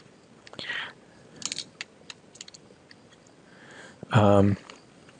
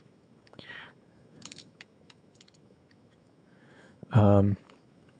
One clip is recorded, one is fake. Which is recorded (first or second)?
first